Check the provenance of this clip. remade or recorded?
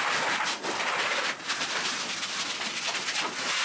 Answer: recorded